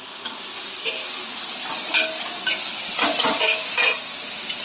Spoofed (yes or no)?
no